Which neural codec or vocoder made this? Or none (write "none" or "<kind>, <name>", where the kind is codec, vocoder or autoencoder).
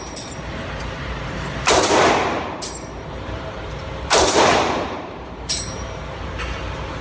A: vocoder, BigVGAN v2